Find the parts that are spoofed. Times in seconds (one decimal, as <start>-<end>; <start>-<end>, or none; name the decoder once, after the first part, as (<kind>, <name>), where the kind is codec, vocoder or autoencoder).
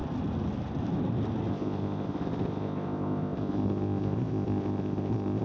1.5-5.4 (codec, ZipCodec)